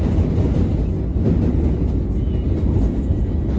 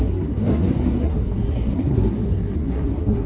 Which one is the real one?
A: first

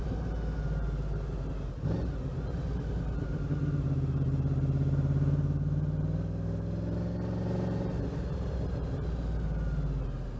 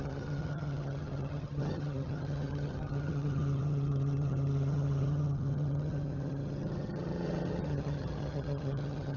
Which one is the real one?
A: first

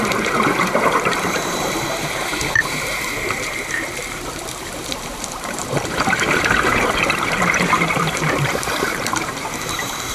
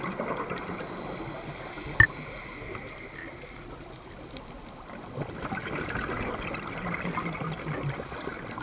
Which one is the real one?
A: second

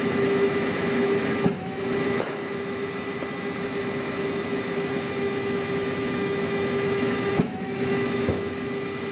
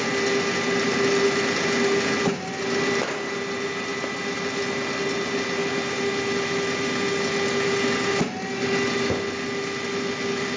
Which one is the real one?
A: second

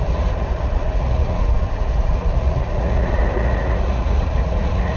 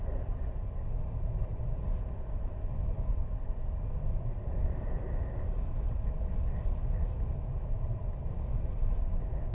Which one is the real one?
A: second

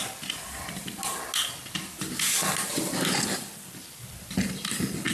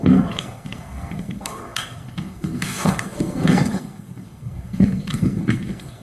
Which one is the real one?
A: first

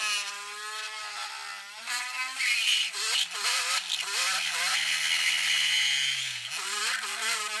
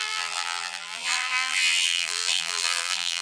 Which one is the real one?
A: first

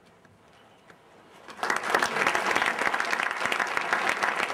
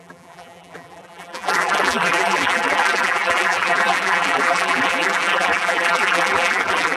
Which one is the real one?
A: first